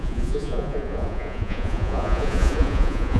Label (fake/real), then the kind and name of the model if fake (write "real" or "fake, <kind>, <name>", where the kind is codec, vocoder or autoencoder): fake, vocoder, Vocos